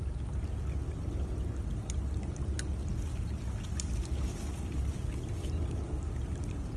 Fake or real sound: real